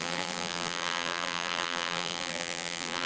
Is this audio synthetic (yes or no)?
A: yes